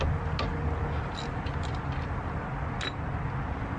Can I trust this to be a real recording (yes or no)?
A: yes